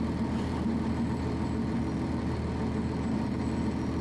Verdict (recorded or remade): recorded